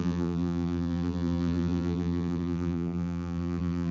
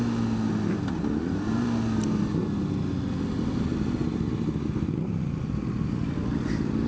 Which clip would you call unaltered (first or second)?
second